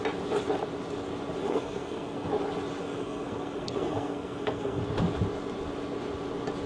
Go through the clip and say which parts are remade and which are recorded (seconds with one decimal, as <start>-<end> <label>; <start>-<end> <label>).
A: 0.0-1.4 recorded; 1.4-2.3 remade; 2.3-2.8 recorded; 2.8-4.8 remade; 4.8-6.7 recorded